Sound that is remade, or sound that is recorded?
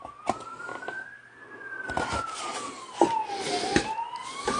recorded